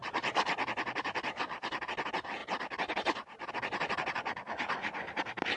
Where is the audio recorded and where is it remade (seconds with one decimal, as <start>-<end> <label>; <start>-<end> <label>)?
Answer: 0.0-1.7 remade; 1.7-2.4 recorded; 2.4-3.5 remade; 3.5-5.6 recorded